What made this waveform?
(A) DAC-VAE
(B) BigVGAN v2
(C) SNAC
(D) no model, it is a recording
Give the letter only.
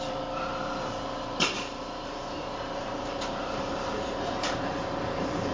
B